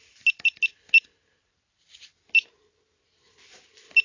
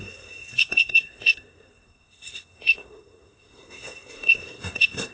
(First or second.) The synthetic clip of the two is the second